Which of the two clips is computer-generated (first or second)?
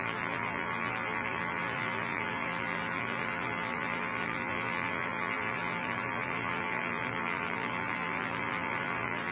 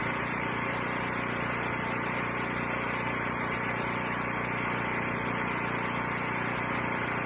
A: first